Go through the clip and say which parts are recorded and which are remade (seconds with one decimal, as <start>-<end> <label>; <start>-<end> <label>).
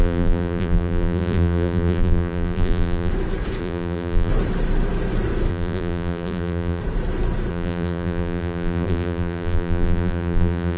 0.0-3.1 remade; 3.1-3.6 recorded; 3.6-4.3 remade; 4.3-5.5 recorded; 5.5-6.8 remade; 6.8-7.5 recorded; 7.5-10.8 remade